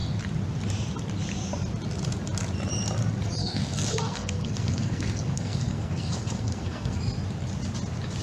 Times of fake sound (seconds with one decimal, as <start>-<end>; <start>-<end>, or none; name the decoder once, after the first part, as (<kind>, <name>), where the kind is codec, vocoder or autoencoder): 3.4-7.0 (codec, SNAC)